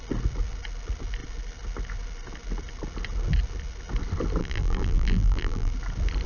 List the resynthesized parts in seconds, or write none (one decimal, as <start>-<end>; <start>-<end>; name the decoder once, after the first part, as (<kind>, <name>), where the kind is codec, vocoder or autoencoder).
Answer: 4.4-5.7 (vocoder, BigVGAN v2)